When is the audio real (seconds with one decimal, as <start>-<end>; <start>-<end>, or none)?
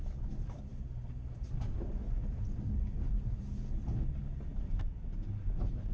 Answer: 0.0-2.2; 3.4-4.5; 5.3-5.9